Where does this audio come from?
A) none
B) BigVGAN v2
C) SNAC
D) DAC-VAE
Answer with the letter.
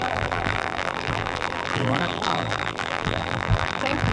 B